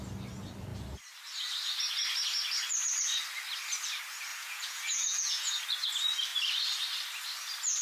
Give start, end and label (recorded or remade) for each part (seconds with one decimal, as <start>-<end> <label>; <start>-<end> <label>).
0.0-4.3 recorded; 4.3-5.6 remade; 5.6-7.8 recorded